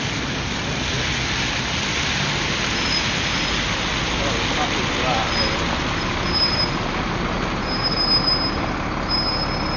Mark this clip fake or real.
real